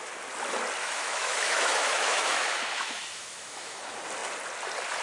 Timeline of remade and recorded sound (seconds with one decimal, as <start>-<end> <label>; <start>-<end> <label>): 0.0-0.8 recorded; 0.8-3.8 remade; 3.8-5.0 recorded